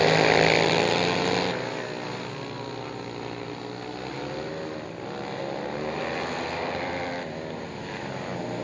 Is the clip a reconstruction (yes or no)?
no